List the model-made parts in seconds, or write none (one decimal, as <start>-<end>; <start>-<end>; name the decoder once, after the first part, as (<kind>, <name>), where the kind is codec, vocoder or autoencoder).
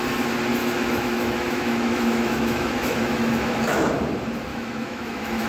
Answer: 0.6-3.9 (autoencoder, DAC-VAE); 4.5-5.5